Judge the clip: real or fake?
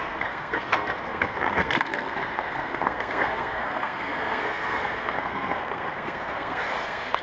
fake